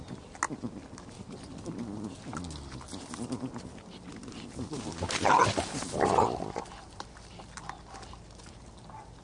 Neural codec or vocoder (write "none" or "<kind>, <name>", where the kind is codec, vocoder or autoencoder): none